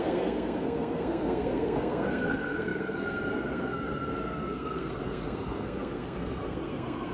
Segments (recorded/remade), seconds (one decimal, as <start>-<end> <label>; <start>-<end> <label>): 0.0-7.1 remade

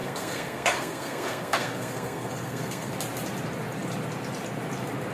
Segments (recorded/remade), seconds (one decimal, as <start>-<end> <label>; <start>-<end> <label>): 0.0-2.9 remade; 2.9-5.1 recorded

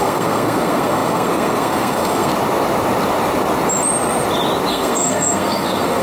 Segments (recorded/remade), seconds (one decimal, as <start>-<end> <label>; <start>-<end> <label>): 0.0-2.3 remade; 2.3-4.7 recorded; 4.7-6.0 remade

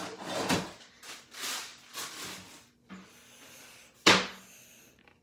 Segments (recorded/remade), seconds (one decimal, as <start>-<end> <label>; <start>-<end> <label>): 0.0-5.2 recorded

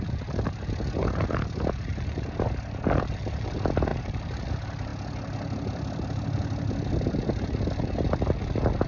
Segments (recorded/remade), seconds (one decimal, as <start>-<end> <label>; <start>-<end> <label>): 0.0-8.9 recorded

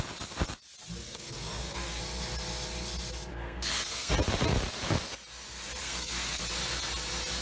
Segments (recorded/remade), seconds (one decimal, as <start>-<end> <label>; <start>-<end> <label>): 0.0-1.0 recorded; 1.0-2.0 remade; 2.0-3.3 recorded; 3.3-4.1 remade; 4.1-5.8 recorded; 5.8-6.4 remade; 6.4-7.4 recorded